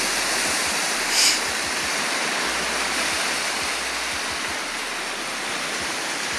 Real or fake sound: real